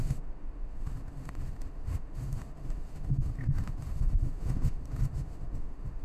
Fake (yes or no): yes